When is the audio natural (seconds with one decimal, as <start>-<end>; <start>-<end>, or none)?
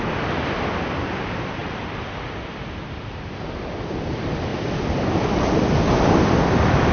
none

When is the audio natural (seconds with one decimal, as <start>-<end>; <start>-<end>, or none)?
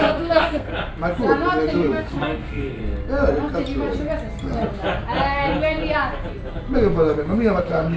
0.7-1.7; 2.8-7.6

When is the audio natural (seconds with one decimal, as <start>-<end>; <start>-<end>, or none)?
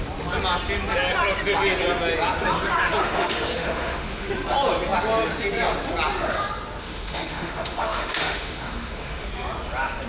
0.0-3.0; 4.3-6.8; 9.3-10.1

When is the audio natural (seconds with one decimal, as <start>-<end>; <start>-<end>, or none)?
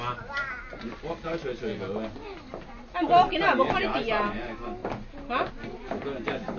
0.0-6.6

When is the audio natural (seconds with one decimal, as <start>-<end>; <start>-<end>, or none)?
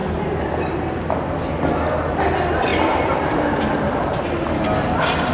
0.0-2.7; 4.2-5.3